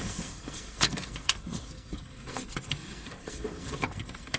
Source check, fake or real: fake